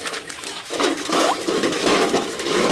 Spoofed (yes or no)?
yes